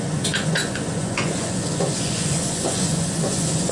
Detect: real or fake fake